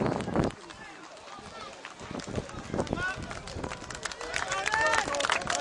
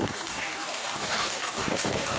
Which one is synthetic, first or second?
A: second